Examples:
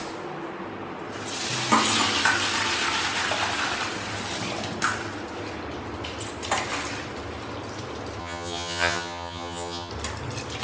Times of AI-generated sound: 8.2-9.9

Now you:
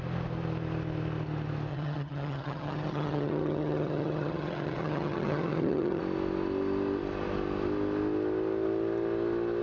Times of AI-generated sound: 1.7-6.0

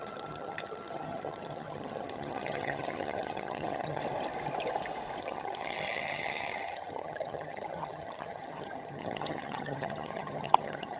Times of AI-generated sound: 0.0-4.0; 5.2-11.0